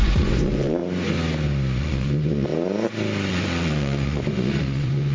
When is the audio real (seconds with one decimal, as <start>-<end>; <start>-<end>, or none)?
0.8-1.8; 2.5-3.3